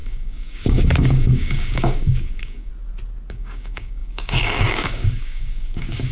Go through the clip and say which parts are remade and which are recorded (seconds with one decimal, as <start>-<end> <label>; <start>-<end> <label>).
0.0-2.7 remade; 2.7-3.3 recorded; 3.3-6.1 remade